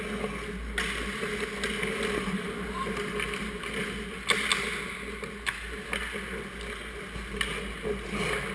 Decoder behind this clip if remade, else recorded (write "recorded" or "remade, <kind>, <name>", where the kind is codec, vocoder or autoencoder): recorded